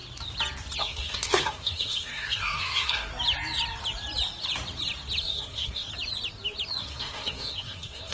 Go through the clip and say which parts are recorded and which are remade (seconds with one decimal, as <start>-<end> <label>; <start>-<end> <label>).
0.0-0.8 recorded; 0.8-3.1 remade; 3.1-5.2 recorded; 5.2-5.9 remade; 5.9-6.8 recorded; 6.8-8.1 remade